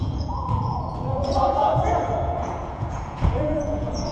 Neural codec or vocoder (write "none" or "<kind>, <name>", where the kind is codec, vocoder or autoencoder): vocoder, Vocos